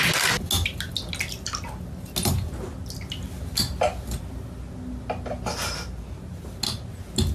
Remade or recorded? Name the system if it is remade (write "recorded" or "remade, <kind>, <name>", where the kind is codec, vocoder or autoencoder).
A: recorded